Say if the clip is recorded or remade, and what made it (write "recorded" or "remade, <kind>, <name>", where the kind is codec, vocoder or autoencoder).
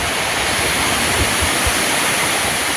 recorded